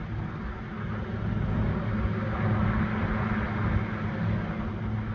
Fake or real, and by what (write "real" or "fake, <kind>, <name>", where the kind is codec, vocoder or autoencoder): real